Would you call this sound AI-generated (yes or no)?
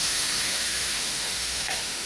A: yes